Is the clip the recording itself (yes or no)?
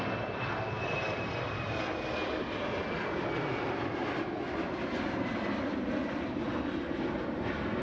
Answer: yes